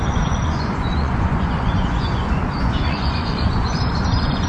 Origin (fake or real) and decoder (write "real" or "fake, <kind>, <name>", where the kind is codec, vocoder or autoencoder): fake, vocoder, Vocos